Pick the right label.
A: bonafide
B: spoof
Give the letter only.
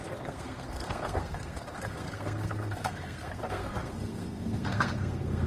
B